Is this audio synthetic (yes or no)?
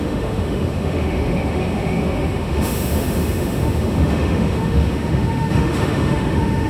yes